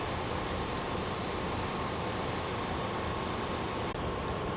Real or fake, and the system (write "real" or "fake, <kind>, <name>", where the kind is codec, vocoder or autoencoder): real